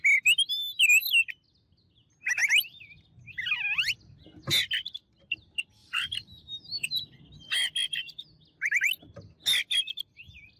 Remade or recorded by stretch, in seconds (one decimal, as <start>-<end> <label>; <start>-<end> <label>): 0.0-5.8 recorded; 5.8-7.2 remade; 7.2-10.6 recorded